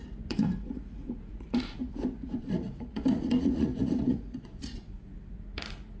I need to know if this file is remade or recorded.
remade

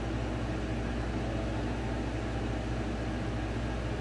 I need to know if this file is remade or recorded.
recorded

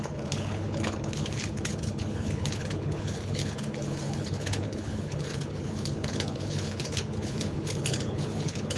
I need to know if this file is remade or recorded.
remade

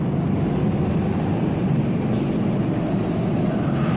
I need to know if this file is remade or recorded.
recorded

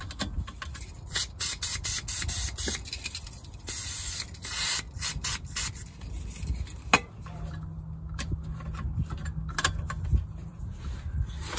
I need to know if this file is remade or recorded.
recorded